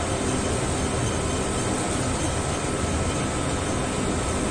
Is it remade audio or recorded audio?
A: recorded